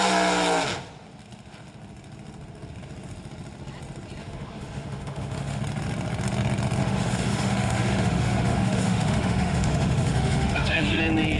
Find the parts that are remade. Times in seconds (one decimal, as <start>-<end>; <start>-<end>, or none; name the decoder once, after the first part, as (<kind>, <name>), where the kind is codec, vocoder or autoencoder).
4.2-5.6 (autoencoder, DAC-VAE); 6.8-11.0